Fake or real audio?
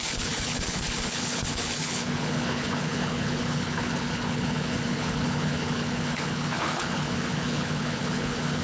fake